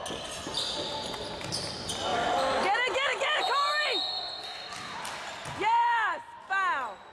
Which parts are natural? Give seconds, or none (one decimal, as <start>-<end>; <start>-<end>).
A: 0.0-7.1